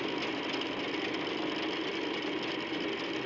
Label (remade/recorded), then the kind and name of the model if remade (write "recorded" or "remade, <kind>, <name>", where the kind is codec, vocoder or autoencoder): recorded